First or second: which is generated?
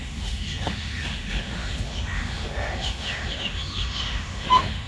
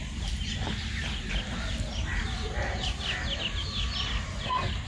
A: first